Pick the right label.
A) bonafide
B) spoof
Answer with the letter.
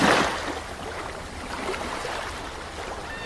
A